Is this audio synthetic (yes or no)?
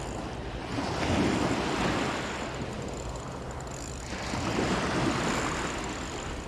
no